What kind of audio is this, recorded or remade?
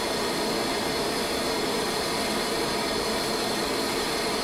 recorded